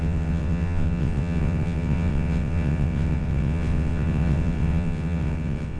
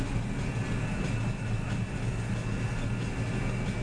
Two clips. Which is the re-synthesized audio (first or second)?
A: first